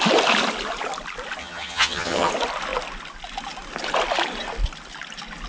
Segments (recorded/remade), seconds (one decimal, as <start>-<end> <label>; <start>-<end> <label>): 0.0-1.4 recorded; 1.4-2.3 remade; 2.3-5.5 recorded